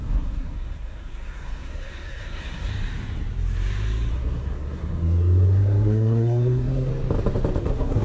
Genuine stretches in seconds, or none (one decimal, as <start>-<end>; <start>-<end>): 2.7-4.1; 6.9-7.6